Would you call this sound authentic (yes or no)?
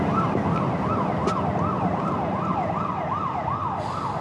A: yes